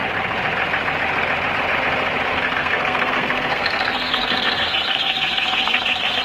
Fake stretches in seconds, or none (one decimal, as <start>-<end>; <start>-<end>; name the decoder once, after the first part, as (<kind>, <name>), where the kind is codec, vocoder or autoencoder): 2.3-6.2 (codec, SNAC)

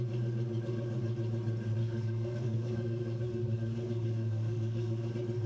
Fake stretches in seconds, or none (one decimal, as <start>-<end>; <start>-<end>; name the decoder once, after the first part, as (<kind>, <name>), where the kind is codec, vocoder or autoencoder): 1.8-5.1 (codec, SNAC)

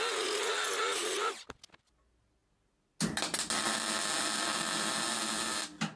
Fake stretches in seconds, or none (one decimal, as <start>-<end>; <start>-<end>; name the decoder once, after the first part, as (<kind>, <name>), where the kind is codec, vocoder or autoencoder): none

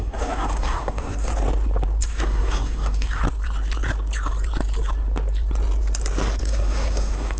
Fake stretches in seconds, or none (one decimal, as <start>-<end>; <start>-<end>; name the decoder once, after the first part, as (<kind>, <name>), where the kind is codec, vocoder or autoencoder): 0.0-1.3 (codec, SNAC); 2.0-3.2; 6.4-7.4

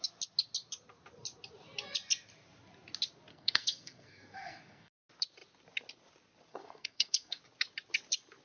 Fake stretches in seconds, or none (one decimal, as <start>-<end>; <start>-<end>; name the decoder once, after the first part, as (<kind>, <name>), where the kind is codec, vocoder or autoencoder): 3.3-4.9 (codec, SNAC); 6.5-7.4